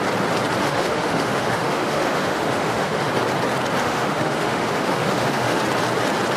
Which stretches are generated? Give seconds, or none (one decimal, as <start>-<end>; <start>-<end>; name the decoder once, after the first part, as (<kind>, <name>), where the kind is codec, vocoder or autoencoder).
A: 0.6-3.1 (autoencoder, DAC-VAE); 3.8-5.6